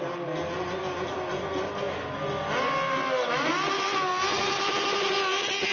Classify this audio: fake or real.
real